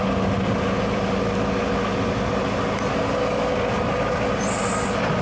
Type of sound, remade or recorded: recorded